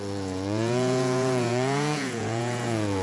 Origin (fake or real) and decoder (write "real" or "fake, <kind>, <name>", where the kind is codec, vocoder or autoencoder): fake, vocoder, Vocos